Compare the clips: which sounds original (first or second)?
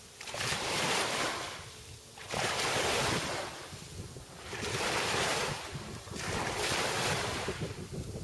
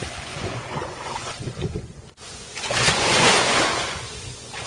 first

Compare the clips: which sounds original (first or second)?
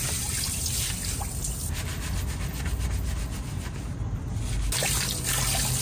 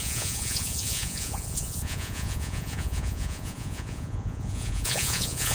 first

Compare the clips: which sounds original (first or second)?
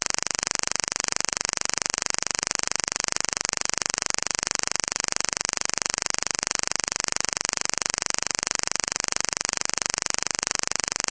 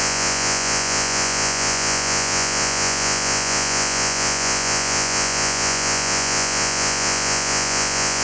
first